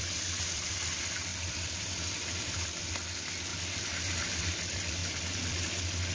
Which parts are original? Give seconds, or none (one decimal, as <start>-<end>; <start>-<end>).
1.3-1.8; 3.5-4.4; 5.0-6.1

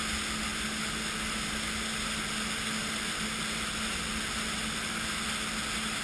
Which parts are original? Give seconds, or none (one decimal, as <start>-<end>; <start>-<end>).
0.0-6.0

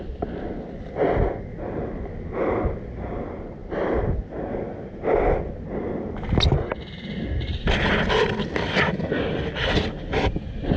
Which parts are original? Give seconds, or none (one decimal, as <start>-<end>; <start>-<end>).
0.0-10.8